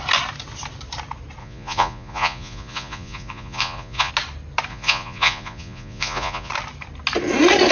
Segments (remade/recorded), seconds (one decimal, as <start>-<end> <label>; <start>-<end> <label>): 0.0-1.4 recorded; 1.4-4.1 remade; 4.1-4.7 recorded; 4.7-6.5 remade; 6.5-7.7 recorded